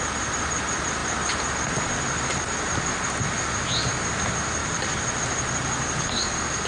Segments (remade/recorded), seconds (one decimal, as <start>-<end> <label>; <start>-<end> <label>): 0.0-4.6 recorded; 4.6-5.2 remade; 5.2-6.7 recorded